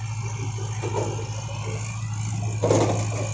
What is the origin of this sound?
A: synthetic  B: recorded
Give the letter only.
B